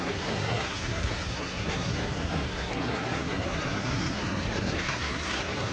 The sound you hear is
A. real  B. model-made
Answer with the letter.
B